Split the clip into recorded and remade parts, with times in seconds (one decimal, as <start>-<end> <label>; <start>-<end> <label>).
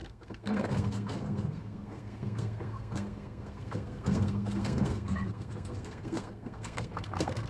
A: 0.0-7.5 remade